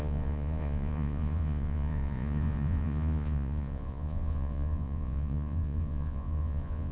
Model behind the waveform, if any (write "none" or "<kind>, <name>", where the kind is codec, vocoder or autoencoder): vocoder, Vocos